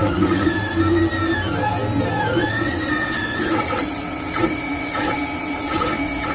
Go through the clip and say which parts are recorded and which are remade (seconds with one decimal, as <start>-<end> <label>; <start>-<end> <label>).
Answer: 0.0-0.7 remade; 0.7-2.4 recorded; 2.4-6.3 remade